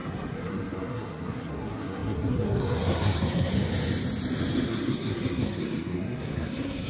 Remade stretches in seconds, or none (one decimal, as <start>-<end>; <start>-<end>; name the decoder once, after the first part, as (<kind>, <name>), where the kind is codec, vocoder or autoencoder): 0.0-3.5 (codec, SNAC); 4.7-6.9

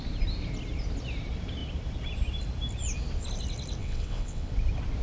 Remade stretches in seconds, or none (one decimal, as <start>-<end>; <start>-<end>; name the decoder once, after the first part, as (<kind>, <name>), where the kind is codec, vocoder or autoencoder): 3.8-4.5 (vocoder, WaveNeXt)

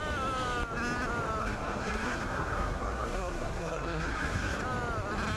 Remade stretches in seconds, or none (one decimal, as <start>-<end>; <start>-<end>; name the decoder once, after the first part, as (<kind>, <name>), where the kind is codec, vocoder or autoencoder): 1.4-4.6 (codec, SNAC)

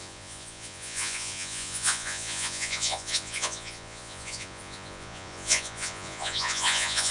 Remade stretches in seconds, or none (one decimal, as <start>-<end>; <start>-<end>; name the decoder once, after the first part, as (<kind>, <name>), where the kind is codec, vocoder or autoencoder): 0.0-7.1 (vocoder, Vocos)